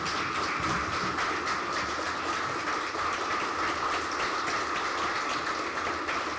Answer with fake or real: real